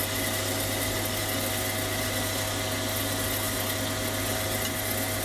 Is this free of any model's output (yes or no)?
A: yes